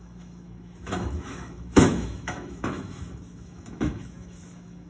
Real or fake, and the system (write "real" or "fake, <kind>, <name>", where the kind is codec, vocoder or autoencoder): fake, autoencoder, DAC-VAE